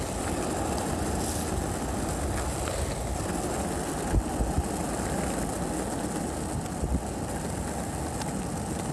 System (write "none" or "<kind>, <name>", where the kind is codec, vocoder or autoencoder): none